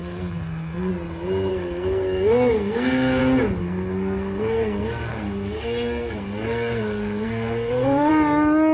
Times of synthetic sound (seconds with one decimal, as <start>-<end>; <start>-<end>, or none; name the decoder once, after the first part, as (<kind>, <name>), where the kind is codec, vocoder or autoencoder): 0.0-0.9 (codec, SNAC); 1.5-3.2; 3.6-8.1